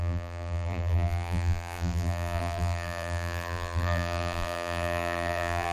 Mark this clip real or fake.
fake